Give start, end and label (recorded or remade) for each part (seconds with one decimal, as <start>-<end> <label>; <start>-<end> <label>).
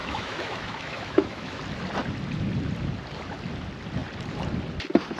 0.0-1.6 remade; 1.6-5.2 recorded